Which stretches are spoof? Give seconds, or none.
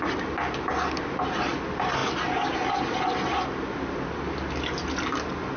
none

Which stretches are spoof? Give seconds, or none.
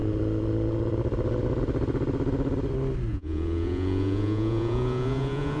3.1-5.6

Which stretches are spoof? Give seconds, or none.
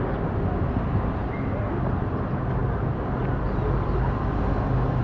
none